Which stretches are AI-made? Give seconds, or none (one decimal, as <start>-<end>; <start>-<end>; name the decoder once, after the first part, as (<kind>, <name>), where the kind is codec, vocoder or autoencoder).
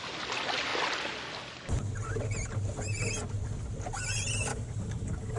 4.5-5.4 (codec, DAC)